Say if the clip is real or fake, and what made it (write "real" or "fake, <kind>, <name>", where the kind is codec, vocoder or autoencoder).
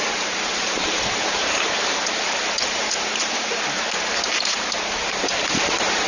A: fake, vocoder, BigVGAN v2